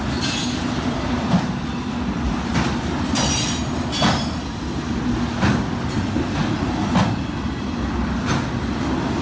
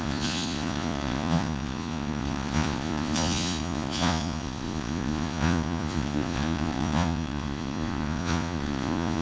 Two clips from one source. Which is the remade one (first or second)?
second